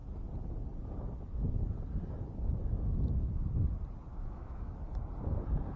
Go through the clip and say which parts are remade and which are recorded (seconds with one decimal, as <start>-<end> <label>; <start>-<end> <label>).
0.0-4.1 recorded; 4.1-4.7 remade; 4.7-5.8 recorded